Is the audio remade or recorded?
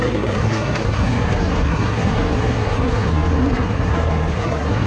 remade